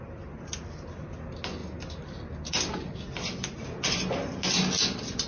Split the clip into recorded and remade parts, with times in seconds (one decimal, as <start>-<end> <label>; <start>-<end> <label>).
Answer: 0.0-5.3 recorded